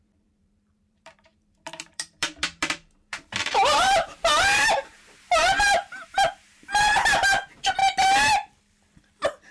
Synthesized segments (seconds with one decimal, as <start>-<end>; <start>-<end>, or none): 0.0-7.8